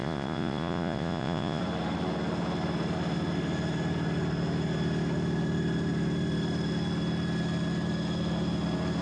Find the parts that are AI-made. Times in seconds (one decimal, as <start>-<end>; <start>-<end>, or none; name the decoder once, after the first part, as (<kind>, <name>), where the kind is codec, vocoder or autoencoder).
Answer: 0.0-1.6 (vocoder, Vocos)